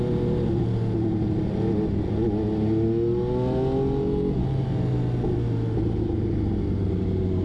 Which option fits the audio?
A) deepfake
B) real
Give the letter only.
B